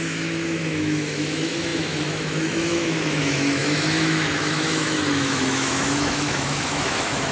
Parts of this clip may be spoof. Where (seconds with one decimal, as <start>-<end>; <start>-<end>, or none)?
0.0-7.3